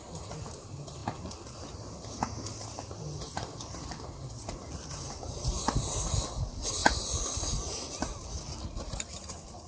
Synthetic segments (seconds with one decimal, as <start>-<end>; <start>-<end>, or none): none